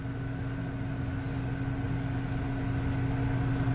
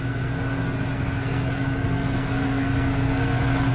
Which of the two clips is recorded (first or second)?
first